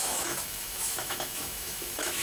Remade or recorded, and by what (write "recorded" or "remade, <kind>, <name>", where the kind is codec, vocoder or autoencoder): remade, autoencoder, DAC-VAE